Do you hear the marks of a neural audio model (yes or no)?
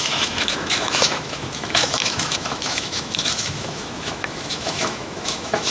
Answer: yes